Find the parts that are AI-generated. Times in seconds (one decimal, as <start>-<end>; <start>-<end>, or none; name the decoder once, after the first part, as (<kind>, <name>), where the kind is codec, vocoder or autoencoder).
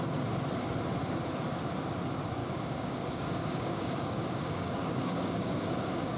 2.4-6.2 (codec, DAC)